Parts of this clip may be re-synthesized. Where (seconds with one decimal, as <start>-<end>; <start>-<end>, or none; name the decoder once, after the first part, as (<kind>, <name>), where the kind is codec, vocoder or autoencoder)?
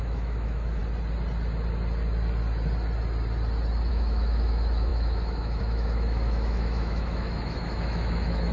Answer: 0.0-0.8 (autoencoder, DAC-VAE); 3.9-8.5